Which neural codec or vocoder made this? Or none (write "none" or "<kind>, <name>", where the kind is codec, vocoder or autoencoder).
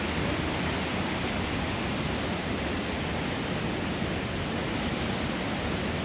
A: none